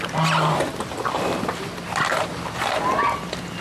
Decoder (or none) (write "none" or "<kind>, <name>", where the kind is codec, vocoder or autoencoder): none